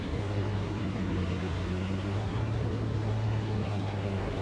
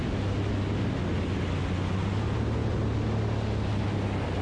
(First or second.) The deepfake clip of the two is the first